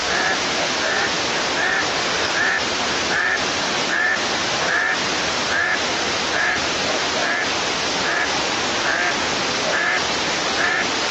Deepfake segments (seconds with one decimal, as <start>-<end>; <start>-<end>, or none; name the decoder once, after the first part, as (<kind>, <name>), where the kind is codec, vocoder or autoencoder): 0.0-7.2 (vocoder, BigVGAN v2); 8.1-11.1